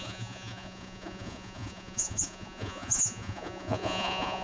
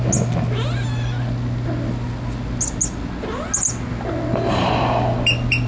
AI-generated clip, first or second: first